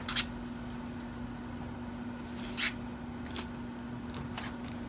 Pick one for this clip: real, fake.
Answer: real